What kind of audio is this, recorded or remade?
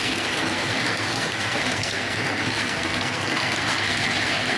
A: remade